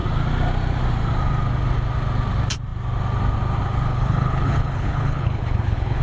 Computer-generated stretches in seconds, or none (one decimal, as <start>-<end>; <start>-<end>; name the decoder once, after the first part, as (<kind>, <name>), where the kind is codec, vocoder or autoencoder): 3.9-6.0 (codec, HILCodec)